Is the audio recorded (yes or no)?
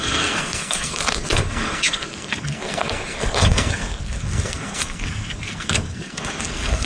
no